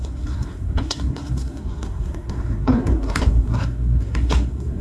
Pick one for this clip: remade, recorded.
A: remade